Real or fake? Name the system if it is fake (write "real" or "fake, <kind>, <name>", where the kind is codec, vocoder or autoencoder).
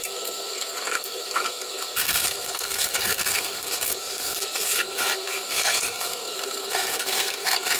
fake, codec, SNAC